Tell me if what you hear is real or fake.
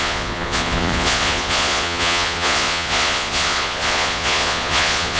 fake